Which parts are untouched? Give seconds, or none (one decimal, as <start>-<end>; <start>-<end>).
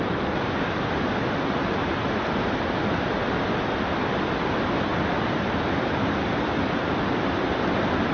0.0-8.1